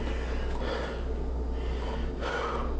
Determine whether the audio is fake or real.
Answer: real